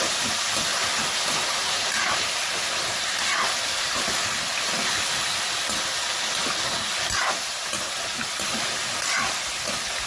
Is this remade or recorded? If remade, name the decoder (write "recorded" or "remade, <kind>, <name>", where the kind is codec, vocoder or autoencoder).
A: recorded